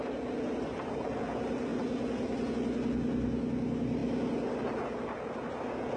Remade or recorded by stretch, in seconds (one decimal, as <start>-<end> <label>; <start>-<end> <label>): 0.0-6.0 recorded